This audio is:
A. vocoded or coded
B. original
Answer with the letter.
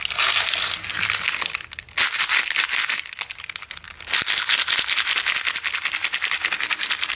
B